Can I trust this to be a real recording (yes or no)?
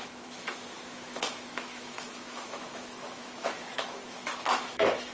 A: no